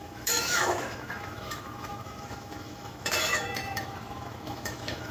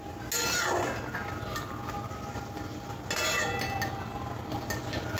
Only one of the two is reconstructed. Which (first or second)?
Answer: first